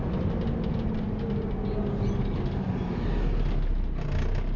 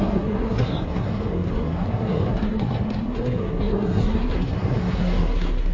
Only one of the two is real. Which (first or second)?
first